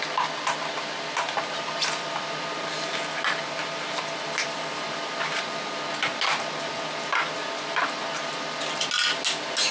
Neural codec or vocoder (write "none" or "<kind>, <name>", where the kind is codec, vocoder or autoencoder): none